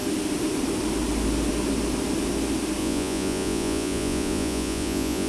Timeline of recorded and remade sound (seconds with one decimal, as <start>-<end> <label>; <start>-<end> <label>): 0.0-2.8 recorded; 2.8-5.3 remade

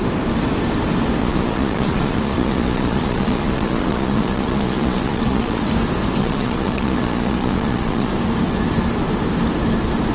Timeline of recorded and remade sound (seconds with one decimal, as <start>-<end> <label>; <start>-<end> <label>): 0.0-1.2 recorded; 1.2-5.6 remade; 5.6-6.2 recorded; 6.2-8.1 remade; 8.1-10.1 recorded